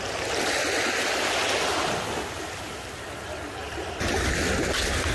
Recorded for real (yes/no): yes